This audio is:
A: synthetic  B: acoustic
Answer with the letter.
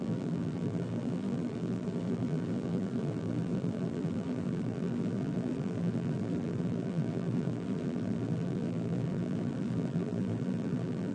A